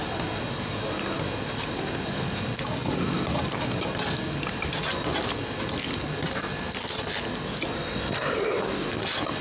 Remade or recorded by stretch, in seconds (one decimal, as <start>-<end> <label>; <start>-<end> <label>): 0.0-9.4 recorded